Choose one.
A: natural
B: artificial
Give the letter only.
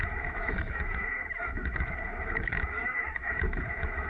B